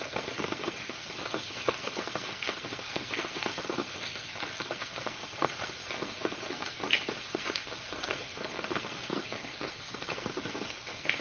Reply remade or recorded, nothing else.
remade